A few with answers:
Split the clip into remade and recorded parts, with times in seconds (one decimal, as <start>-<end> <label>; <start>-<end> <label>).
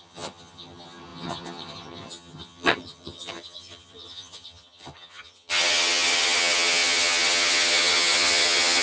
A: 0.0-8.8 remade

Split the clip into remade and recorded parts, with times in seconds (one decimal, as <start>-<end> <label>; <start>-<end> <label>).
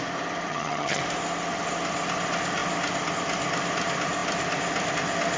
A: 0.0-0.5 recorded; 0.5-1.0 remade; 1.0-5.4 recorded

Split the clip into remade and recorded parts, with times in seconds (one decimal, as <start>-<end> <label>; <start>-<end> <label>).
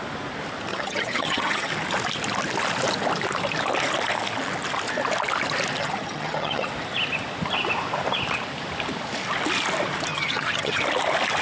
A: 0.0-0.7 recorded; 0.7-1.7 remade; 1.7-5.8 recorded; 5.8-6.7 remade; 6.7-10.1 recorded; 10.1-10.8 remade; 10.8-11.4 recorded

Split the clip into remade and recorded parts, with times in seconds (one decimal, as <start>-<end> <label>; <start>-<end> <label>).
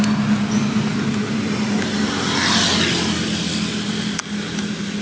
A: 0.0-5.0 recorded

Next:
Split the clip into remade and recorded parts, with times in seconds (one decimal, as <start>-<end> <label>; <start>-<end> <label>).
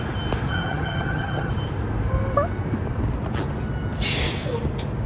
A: 0.0-0.5 recorded; 0.5-1.5 remade; 1.5-5.1 recorded